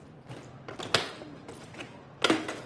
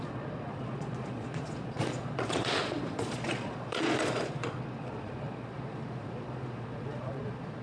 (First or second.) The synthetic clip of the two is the second